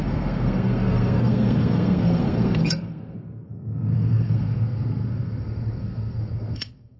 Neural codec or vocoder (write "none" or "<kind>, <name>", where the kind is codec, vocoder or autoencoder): codec, SNAC